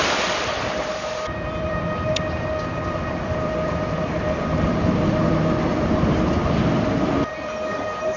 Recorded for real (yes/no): no